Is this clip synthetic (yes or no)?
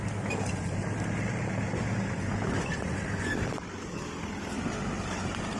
no